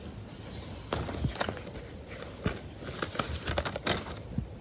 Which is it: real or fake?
real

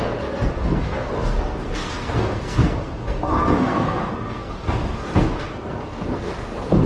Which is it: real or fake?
fake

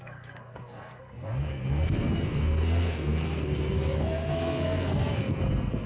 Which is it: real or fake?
fake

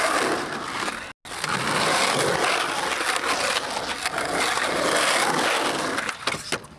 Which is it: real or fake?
real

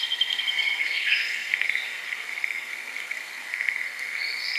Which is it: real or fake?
fake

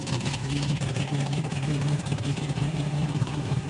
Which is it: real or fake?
fake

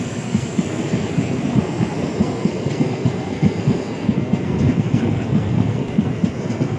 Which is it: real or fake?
fake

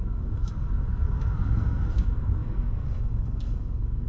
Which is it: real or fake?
fake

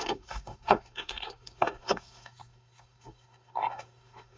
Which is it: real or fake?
fake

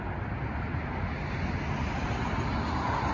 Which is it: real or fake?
real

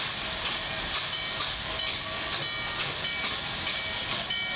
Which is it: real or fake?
real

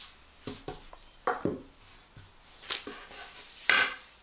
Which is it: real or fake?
real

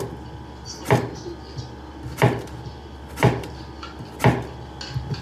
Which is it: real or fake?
real